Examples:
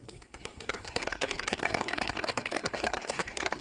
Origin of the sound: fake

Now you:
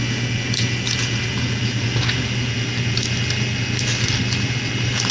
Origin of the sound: real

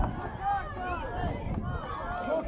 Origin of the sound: real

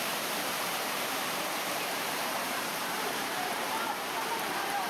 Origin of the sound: fake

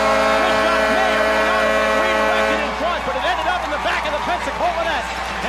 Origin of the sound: real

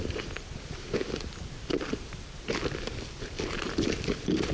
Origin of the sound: fake